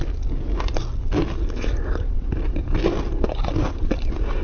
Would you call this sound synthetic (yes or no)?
no